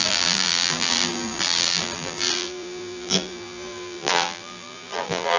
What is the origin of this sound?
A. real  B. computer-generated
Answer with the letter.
B